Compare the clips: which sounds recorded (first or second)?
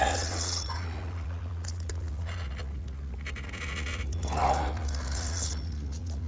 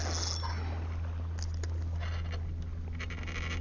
second